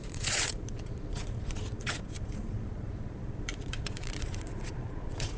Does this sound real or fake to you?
fake